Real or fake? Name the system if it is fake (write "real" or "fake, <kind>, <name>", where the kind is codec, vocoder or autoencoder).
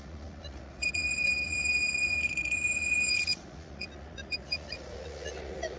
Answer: fake, vocoder, Vocos